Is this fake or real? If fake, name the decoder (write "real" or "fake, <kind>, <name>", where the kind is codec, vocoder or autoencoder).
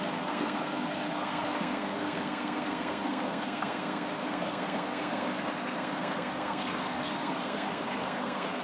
fake, codec, SNAC